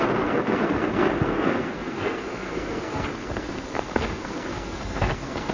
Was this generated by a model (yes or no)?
yes